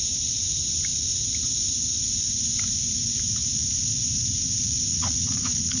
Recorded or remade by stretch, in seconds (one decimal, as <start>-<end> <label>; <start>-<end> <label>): 0.0-4.9 recorded; 4.9-5.8 remade